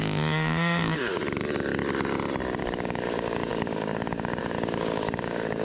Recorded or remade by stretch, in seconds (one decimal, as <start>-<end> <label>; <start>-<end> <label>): 0.0-1.2 remade; 1.2-2.6 recorded; 2.6-5.6 remade